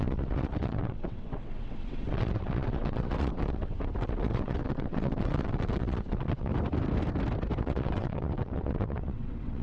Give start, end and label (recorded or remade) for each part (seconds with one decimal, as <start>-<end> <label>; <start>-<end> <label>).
0.0-6.5 remade; 6.5-7.6 recorded; 7.6-9.6 remade